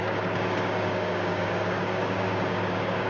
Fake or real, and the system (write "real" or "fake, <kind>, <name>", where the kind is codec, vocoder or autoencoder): fake, codec, DAC